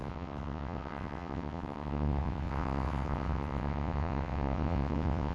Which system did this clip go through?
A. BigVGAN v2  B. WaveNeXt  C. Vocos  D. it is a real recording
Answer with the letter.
B